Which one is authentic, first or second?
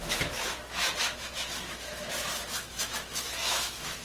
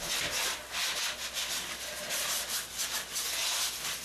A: second